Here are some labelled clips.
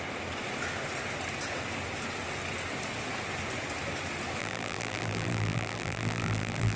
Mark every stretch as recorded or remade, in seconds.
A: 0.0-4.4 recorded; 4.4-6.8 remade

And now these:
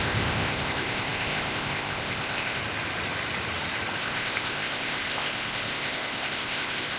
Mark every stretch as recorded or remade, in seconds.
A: 0.0-2.6 remade; 2.6-4.0 recorded; 4.0-7.0 remade

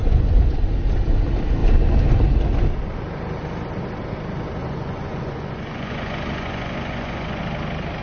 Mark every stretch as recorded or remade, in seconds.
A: 0.0-0.5 remade; 0.5-4.6 recorded; 4.6-7.4 remade; 7.4-8.0 recorded

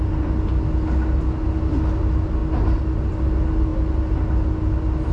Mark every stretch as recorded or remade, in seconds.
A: 0.0-5.1 recorded

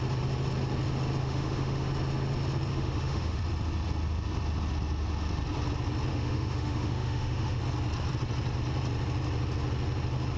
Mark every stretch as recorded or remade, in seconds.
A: 0.0-1.2 recorded; 1.2-1.9 remade; 1.9-2.7 recorded; 2.7-3.4 remade; 3.4-6.1 recorded; 6.1-7.6 remade; 7.6-10.4 recorded

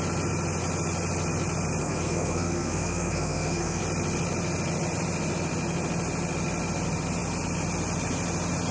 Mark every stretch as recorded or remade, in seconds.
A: 0.0-1.8 recorded; 1.8-3.8 remade; 3.8-8.7 recorded